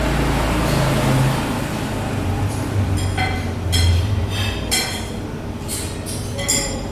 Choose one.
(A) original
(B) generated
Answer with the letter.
A